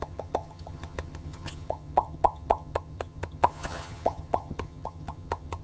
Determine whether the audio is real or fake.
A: fake